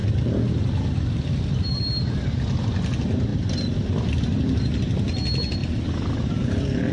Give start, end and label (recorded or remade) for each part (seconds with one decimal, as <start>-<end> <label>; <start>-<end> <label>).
0.0-6.9 recorded